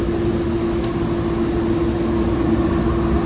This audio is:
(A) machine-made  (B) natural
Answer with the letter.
B